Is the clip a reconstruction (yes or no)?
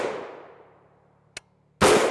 no